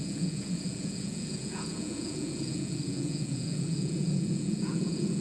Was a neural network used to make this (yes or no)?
yes